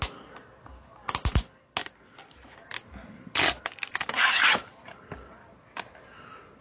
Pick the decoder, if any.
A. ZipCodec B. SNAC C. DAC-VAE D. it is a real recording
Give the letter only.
D